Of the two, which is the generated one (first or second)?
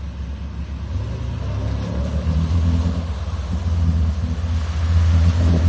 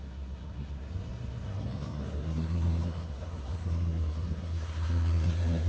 second